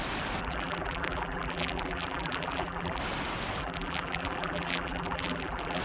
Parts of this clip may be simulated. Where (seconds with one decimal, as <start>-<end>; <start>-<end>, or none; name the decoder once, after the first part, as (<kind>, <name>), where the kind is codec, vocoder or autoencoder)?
0.4-3.0 (vocoder, BigVGAN v2); 3.6-5.8